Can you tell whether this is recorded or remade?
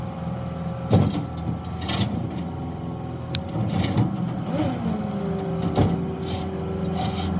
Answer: recorded